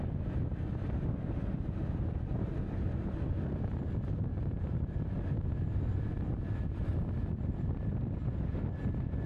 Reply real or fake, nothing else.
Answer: real